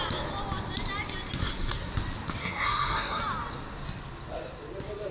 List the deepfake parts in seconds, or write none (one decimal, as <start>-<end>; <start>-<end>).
1.4-1.9; 2.4-3.2